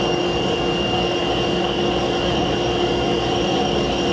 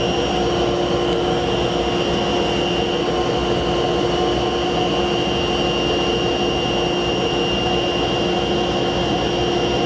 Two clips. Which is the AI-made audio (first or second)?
first